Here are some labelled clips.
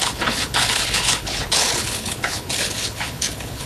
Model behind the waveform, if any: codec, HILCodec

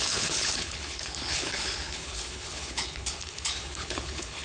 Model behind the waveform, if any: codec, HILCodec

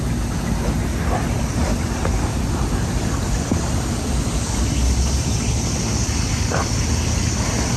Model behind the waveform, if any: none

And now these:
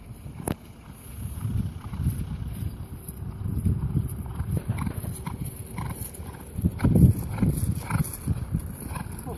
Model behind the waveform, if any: none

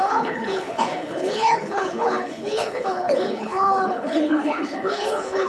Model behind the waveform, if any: codec, HILCodec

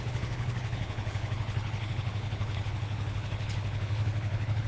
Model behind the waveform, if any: codec, HILCodec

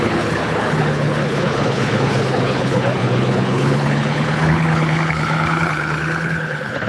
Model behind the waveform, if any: codec, HILCodec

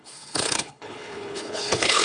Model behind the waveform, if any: codec, HILCodec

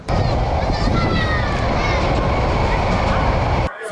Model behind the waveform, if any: none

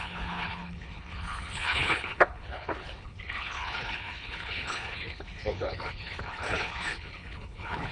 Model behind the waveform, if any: codec, HILCodec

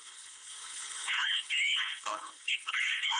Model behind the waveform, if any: codec, HILCodec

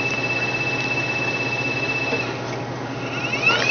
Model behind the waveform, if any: none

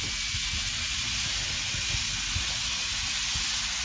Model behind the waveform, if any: none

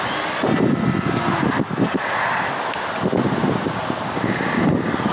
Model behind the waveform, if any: none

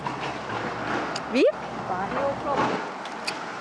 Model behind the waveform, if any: none